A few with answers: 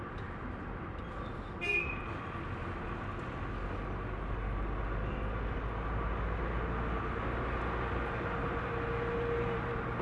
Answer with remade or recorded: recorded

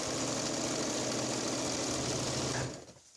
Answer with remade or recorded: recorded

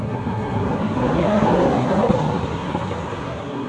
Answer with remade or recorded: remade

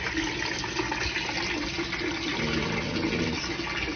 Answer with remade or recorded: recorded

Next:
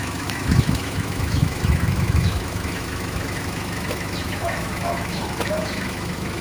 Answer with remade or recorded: remade